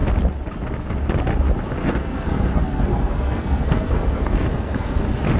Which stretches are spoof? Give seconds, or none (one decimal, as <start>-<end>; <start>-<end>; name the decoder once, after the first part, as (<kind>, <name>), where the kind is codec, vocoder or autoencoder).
1.8-5.0 (codec, SNAC)